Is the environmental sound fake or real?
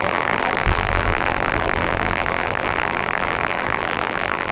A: fake